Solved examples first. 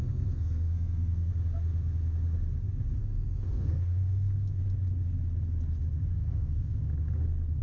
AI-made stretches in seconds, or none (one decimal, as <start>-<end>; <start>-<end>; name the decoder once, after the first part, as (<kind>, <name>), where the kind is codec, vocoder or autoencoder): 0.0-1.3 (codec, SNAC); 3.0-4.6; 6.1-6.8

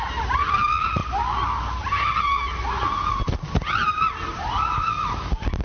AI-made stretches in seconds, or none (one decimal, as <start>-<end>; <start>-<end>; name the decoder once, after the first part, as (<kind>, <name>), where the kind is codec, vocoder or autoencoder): none

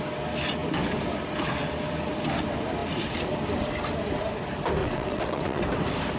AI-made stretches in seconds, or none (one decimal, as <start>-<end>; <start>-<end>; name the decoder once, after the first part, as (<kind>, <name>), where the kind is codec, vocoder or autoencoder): 4.8-5.6 (vocoder, WaveNeXt)

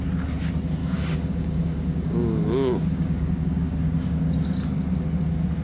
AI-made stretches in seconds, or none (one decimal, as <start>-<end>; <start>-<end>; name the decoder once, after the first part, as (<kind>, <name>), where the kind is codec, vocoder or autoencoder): 0.8-4.2 (codec, DAC)

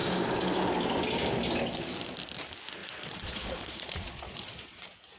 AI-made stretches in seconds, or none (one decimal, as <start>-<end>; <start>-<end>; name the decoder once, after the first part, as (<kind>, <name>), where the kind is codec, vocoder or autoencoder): 2.8-5.2 (vocoder, Vocos)